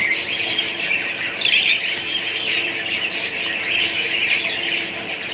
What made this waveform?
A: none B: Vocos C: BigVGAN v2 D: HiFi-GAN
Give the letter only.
C